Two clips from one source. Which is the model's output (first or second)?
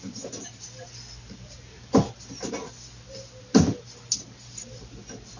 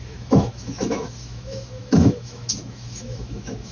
second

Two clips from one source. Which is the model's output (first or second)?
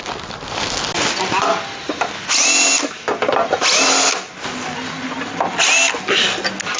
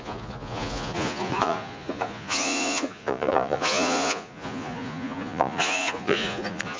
second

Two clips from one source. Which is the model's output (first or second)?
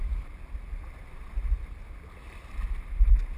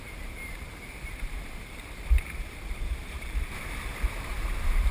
second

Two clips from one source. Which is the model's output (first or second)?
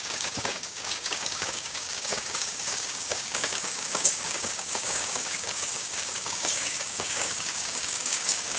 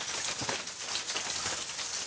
first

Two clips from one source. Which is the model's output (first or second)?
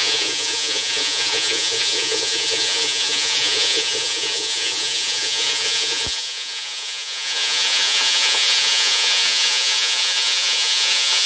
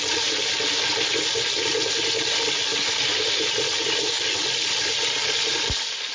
first